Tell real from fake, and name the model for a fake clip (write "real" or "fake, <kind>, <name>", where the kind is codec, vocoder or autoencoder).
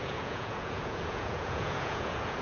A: fake, vocoder, Vocos